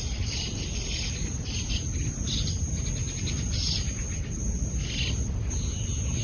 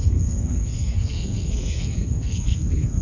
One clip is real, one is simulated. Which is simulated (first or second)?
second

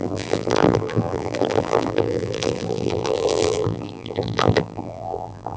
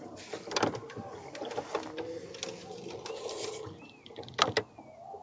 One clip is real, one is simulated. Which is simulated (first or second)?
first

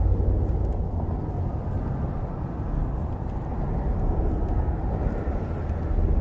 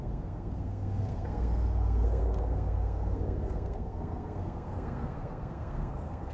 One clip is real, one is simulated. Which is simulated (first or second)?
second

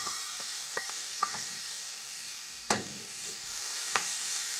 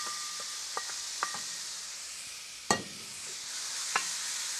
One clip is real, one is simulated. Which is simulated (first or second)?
first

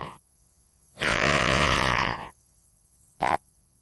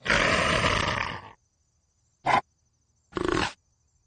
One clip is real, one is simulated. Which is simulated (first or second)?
first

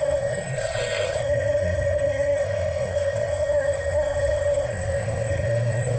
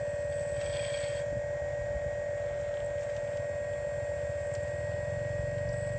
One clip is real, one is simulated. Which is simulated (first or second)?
first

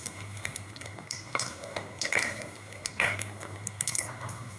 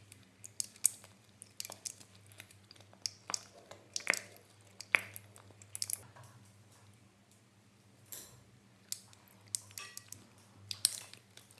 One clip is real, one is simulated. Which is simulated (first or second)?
first